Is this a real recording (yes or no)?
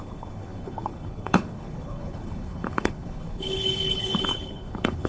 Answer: no